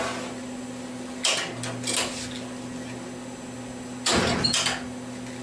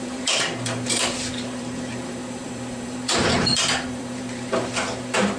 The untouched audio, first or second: first